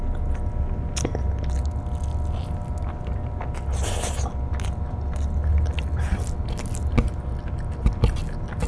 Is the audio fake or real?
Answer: real